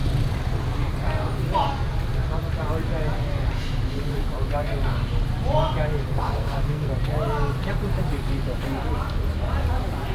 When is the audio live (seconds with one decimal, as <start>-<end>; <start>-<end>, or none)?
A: 0.0-6.1; 6.9-10.1